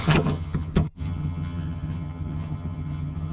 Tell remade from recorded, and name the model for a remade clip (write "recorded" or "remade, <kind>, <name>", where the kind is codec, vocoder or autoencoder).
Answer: remade, vocoder, HiFi-GAN